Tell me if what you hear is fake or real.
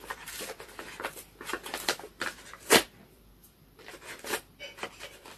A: fake